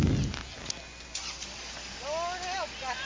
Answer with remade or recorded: recorded